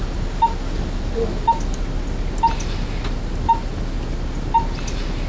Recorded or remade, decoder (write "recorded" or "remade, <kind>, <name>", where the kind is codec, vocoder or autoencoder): recorded